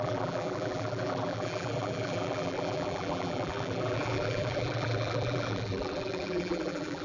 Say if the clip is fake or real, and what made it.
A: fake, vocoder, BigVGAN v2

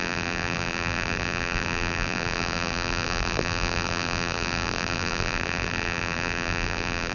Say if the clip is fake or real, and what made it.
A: fake, vocoder, BigVGAN v2